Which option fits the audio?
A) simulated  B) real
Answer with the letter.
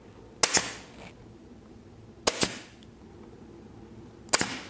B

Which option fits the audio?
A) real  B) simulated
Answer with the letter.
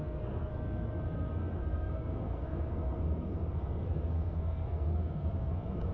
B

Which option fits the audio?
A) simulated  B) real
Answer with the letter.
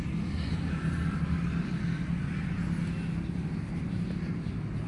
B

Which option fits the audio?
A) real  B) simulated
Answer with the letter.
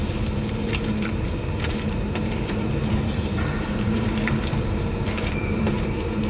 B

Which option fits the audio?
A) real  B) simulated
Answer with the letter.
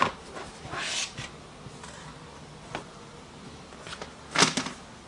A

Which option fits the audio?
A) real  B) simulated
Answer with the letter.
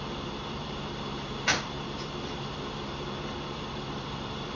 B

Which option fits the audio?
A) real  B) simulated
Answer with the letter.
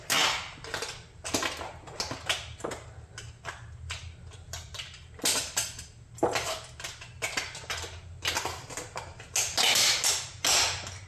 A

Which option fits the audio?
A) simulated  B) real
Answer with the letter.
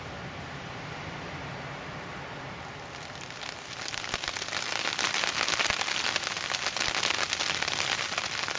B